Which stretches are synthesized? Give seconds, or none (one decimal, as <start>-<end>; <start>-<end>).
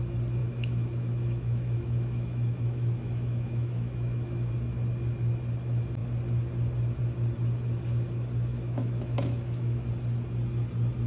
0.4-4.5; 8.5-9.9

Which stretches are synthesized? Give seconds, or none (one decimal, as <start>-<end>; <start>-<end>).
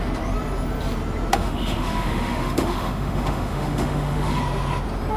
1.3-4.4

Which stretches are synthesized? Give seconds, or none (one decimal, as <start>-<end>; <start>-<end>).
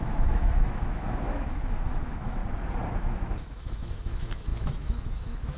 0.0-2.4; 3.0-5.6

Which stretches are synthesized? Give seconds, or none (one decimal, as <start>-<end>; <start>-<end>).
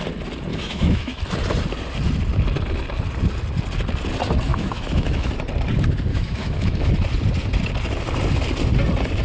0.5-1.2; 4.5-5.3; 6.1-6.9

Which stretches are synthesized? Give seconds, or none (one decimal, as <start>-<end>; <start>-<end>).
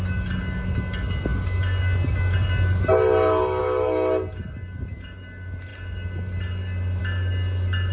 none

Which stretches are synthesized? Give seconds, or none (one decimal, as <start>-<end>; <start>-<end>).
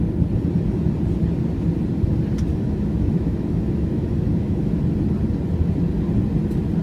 2.5-4.8